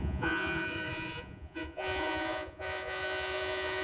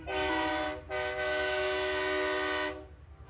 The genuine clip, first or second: second